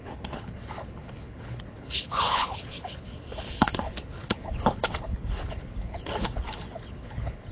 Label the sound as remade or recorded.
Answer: remade